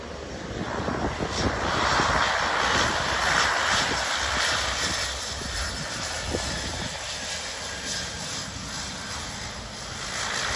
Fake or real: real